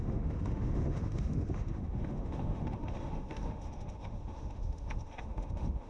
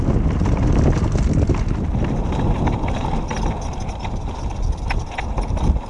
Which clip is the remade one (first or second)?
first